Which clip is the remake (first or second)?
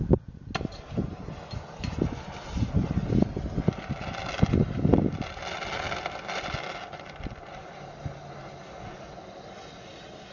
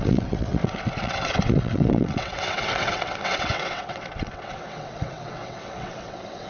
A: second